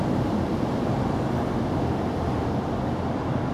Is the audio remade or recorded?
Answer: recorded